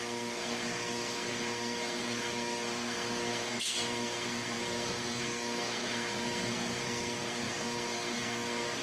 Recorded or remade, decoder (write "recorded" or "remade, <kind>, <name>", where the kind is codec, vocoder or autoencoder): remade, codec, SNAC